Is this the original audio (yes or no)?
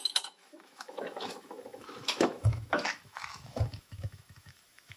no